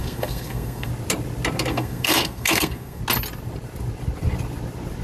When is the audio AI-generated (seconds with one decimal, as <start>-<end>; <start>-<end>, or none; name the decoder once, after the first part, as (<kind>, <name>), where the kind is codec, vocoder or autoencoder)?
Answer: 0.0-0.9 (codec, SNAC); 1.7-3.0